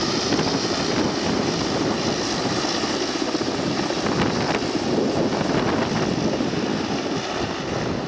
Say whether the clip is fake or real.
real